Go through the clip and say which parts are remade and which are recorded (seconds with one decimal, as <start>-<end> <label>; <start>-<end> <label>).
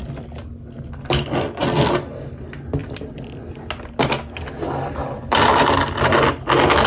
0.0-2.8 recorded; 2.8-3.4 remade; 3.4-5.0 recorded; 5.0-6.1 remade; 6.1-6.9 recorded